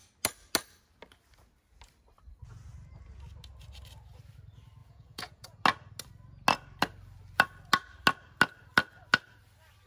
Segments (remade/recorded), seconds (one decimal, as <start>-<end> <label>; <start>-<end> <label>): 0.0-4.8 recorded; 4.8-5.6 remade; 5.6-9.9 recorded